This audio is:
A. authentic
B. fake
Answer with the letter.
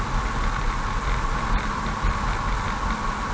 A